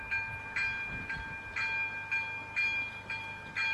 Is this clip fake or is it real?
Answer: real